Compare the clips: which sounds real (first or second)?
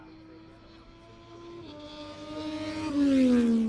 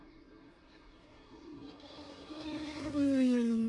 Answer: first